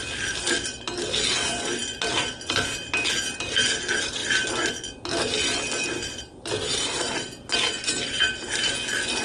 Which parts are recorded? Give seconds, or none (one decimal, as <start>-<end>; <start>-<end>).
0.0-9.2